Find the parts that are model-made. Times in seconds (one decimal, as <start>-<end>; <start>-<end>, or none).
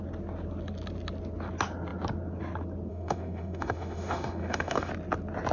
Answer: 2.9-4.9